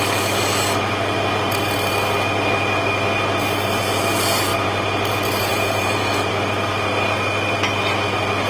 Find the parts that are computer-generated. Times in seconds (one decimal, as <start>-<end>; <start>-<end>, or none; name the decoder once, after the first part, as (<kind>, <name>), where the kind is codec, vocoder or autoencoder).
5.5-6.3 (vocoder, Vocos)

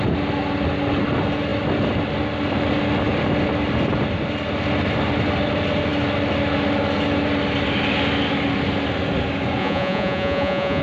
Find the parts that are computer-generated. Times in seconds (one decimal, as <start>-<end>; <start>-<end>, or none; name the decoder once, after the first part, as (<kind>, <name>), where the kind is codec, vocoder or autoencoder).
9.6-10.8 (vocoder, Vocos)